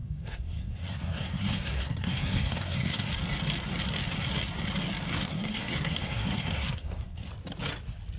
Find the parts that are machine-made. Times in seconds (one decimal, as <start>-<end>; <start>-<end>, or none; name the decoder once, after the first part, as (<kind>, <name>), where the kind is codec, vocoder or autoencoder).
0.0-3.1 (codec, SNAC); 5.1-7.3